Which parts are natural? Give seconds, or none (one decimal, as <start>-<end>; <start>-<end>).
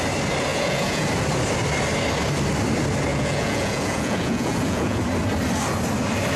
0.0-0.5; 1.1-3.1; 5.0-6.4